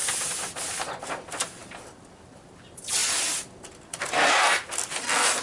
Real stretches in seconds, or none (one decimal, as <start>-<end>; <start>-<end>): 0.0-5.4